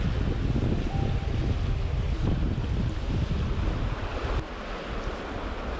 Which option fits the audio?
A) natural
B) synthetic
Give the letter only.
A